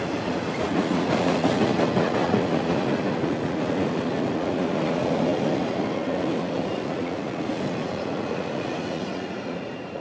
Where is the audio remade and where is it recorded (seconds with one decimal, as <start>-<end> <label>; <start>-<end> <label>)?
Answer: 0.0-10.0 remade